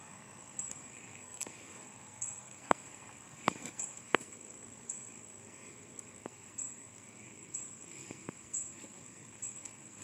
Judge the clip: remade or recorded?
remade